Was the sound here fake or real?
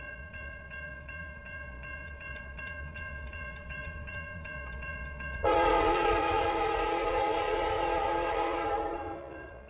fake